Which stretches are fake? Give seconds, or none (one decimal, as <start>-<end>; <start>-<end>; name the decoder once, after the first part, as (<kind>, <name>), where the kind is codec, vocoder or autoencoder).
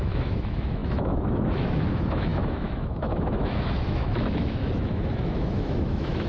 0.0-6.3 (autoencoder, DAC-VAE)